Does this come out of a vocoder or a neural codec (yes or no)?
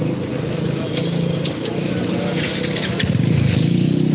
no